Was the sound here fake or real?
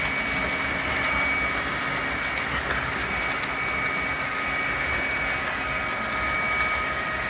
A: real